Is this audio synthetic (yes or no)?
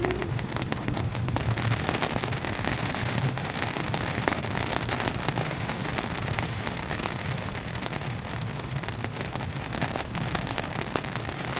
yes